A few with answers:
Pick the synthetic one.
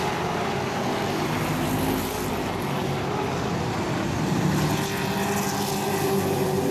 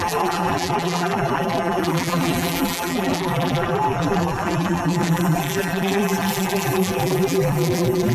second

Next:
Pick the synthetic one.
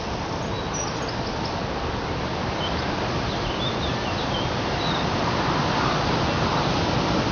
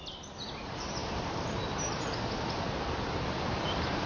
second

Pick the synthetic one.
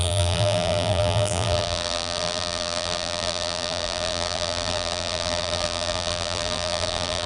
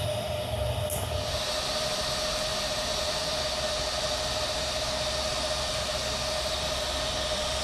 first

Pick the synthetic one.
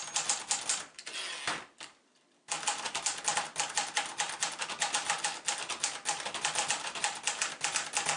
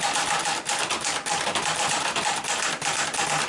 second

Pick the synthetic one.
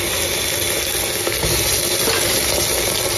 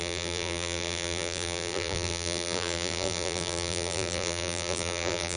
second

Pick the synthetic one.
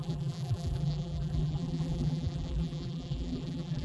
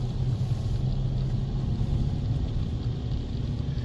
first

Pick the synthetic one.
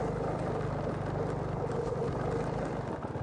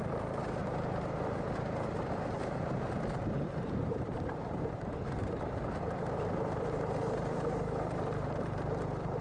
second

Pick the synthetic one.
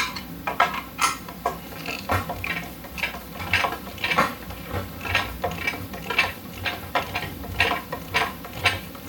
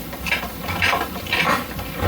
second